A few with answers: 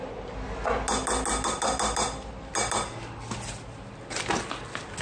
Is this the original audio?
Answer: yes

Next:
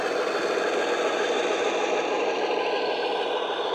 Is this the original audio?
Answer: yes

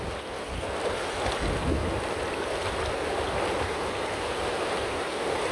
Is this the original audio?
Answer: yes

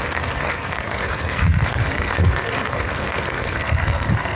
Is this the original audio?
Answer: no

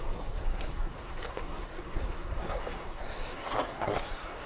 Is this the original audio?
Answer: no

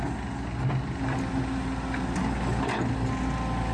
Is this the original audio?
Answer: yes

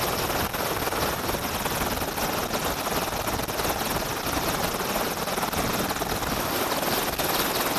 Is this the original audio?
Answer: yes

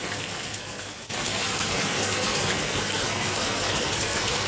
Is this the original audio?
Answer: no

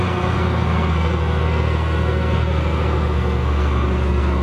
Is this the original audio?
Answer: no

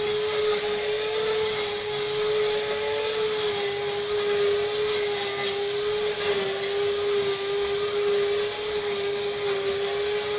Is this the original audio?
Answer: yes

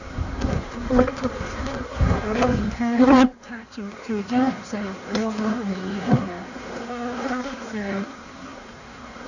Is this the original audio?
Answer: no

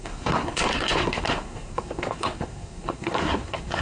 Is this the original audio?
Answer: no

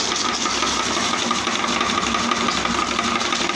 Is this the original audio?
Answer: yes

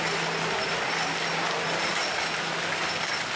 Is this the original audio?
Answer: yes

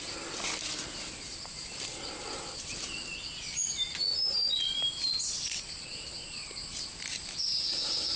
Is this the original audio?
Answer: yes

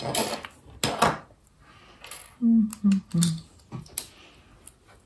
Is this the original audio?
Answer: yes